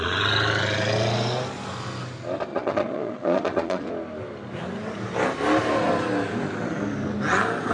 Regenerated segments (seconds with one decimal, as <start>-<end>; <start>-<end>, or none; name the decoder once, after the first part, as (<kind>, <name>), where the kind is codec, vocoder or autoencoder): 2.5-3.9 (vocoder, Vocos)